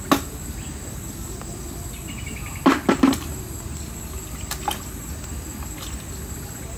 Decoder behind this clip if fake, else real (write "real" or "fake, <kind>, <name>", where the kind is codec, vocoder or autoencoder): real